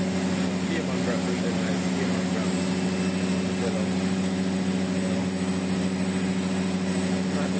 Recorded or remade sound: recorded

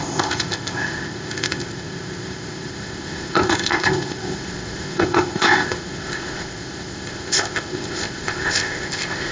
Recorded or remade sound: remade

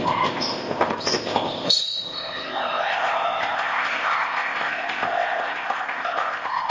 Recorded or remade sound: remade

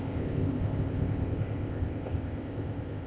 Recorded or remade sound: remade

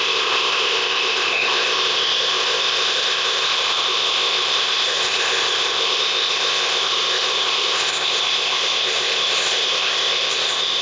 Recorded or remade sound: remade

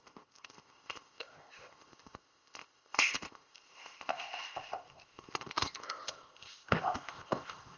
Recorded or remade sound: remade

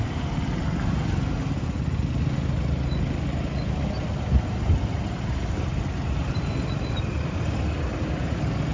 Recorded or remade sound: recorded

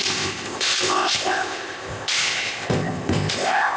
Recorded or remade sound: remade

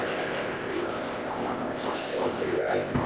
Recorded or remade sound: remade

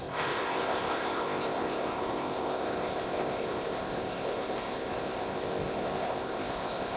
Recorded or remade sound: remade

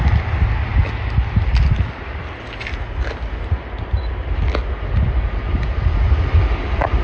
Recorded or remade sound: recorded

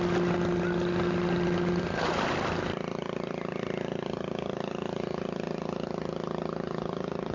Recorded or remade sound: recorded